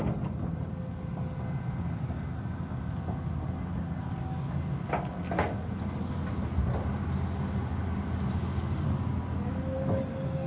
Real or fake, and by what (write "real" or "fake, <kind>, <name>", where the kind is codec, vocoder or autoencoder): real